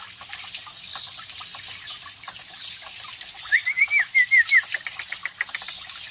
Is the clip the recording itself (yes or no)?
yes